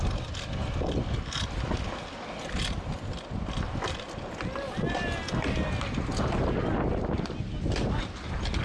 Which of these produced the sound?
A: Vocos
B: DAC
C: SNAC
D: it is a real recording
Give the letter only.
D